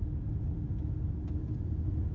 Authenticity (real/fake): real